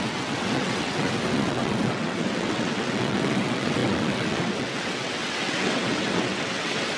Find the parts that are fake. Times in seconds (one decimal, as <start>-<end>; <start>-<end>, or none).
0.0-7.0